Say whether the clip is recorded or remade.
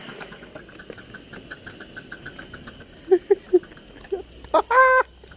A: recorded